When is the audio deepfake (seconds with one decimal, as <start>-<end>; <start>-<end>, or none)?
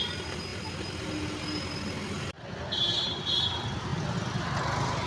0.0-0.5; 2.3-5.1